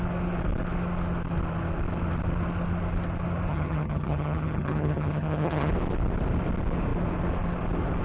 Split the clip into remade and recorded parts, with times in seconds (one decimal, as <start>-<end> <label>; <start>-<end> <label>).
0.0-3.5 recorded; 3.5-5.7 remade; 5.7-8.0 recorded